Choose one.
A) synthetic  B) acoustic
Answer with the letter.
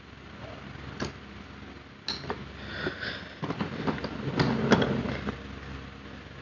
B